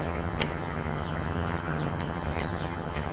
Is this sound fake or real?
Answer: fake